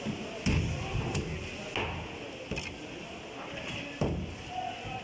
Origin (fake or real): real